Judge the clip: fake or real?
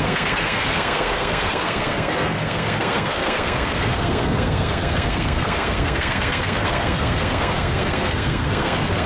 fake